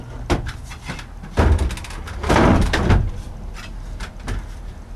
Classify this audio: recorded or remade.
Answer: recorded